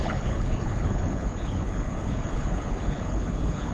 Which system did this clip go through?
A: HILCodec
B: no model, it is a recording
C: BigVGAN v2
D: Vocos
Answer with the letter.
A